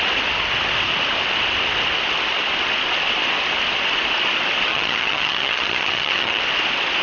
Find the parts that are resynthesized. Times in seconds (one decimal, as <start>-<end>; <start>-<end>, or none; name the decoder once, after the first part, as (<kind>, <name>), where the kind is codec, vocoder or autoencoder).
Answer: 4.7-6.4 (vocoder, HiFi-GAN)